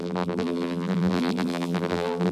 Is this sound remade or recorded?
remade